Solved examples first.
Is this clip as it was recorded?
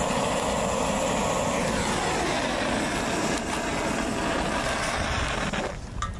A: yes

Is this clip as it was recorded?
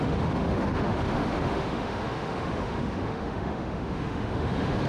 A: no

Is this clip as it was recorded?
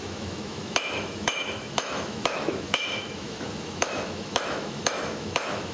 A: no